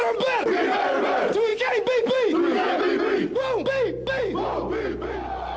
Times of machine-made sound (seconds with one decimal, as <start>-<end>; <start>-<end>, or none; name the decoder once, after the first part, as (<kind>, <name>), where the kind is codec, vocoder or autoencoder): none